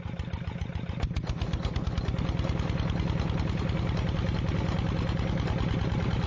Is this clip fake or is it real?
real